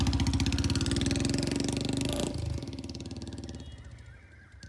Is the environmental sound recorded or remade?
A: recorded